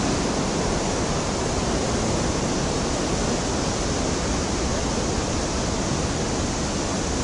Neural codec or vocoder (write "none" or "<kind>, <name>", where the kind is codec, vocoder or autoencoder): none